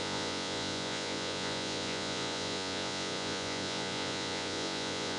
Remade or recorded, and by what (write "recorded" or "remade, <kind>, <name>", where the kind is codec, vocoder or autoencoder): remade, vocoder, Vocos